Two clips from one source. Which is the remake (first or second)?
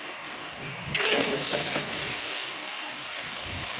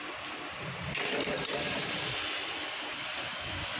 first